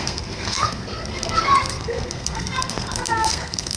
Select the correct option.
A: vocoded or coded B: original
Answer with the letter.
A